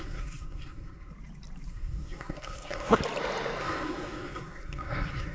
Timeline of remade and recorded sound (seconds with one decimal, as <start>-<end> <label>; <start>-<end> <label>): 0.0-1.1 remade; 1.1-1.7 recorded; 1.7-3.0 remade; 3.0-3.6 recorded; 3.6-5.3 remade